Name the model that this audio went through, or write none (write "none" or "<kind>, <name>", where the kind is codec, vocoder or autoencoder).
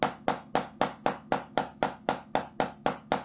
none